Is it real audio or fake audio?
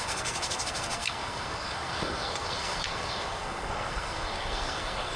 fake